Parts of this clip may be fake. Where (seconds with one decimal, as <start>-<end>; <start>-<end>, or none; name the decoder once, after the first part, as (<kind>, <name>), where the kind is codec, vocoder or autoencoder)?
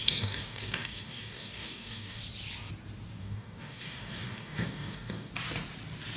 0.0-2.2 (codec, DAC); 3.2-5.3